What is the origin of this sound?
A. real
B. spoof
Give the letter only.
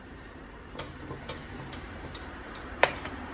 B